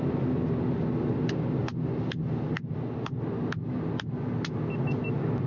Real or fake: real